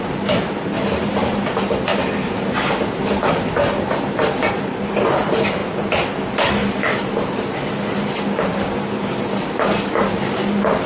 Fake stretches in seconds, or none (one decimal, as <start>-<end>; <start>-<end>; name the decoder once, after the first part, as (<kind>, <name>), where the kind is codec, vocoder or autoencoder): none